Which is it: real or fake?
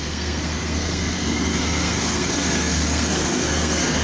fake